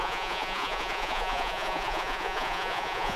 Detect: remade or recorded remade